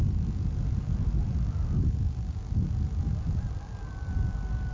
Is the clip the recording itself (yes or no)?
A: yes